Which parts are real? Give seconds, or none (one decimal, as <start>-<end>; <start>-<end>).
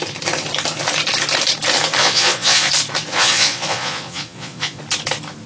0.0-2.0; 2.7-3.1; 4.8-5.5